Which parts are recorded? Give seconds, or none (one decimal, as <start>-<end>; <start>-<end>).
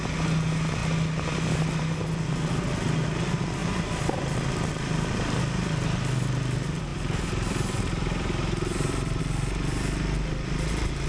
0.0-3.6; 5.4-6.9; 9.2-11.1